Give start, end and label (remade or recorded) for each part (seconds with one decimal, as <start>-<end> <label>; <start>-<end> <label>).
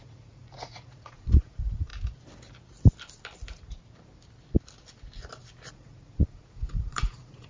0.0-1.9 remade; 1.9-5.7 recorded; 5.7-7.5 remade